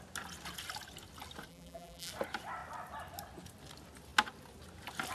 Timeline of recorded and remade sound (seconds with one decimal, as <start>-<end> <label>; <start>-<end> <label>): 0.0-1.5 recorded; 1.5-2.1 remade; 2.1-5.1 recorded